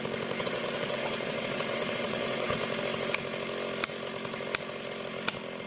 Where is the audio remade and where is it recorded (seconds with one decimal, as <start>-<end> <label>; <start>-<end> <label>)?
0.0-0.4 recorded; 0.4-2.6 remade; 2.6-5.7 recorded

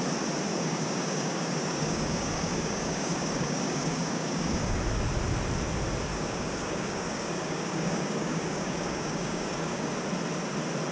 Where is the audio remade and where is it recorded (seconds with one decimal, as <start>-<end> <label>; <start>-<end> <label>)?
0.0-0.5 recorded; 0.5-4.8 remade; 4.8-6.1 recorded; 6.1-9.9 remade; 9.9-10.9 recorded

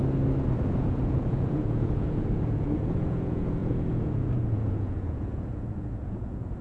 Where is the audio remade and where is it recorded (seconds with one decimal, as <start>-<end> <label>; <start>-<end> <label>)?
0.0-0.7 recorded; 0.7-6.6 remade

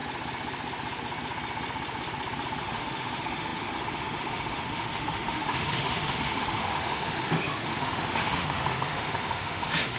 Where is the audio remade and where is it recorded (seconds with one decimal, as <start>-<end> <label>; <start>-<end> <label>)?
0.0-2.6 recorded; 2.6-10.0 remade

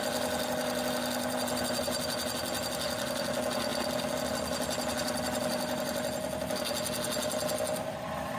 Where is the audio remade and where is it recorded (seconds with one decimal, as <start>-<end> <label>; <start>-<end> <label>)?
0.0-8.4 recorded